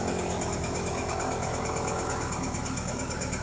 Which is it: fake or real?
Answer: fake